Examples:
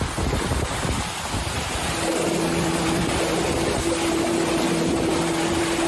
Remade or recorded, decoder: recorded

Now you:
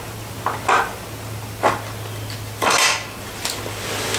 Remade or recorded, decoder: recorded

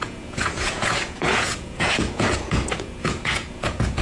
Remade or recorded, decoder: remade, vocoder, Vocos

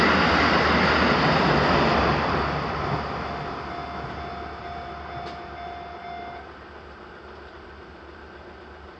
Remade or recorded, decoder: recorded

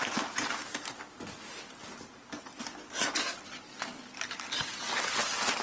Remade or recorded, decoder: recorded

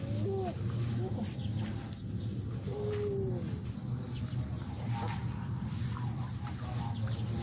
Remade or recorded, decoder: recorded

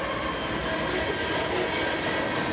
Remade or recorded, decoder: recorded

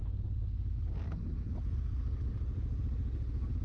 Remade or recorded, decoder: recorded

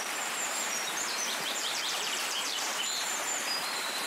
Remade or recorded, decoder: remade, vocoder, BigVGAN v2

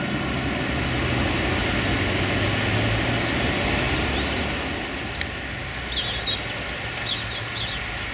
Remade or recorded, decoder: recorded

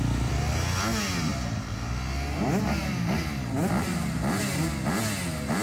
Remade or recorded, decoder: recorded